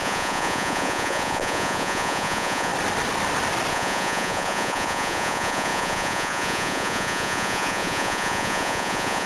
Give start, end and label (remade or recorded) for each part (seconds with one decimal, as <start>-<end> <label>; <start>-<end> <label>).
0.0-2.7 remade; 2.7-3.7 recorded; 3.7-9.3 remade